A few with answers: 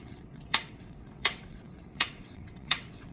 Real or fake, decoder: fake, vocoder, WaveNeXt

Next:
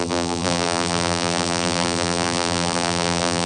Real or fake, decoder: fake, vocoder, BigVGAN v2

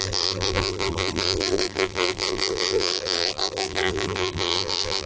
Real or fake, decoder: fake, vocoder, BigVGAN v2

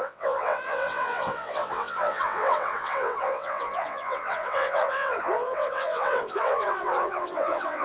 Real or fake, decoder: fake, vocoder, WaveNeXt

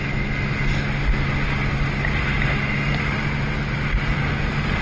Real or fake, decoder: real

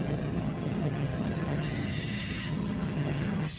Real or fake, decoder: fake, vocoder, HiFi-GAN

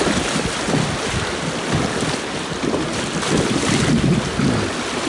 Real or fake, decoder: real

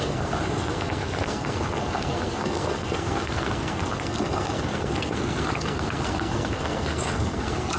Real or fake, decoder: fake, codec, SNAC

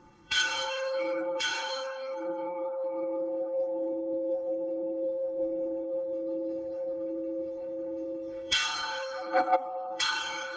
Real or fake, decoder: fake, codec, HILCodec